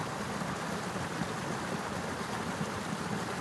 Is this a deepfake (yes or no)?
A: no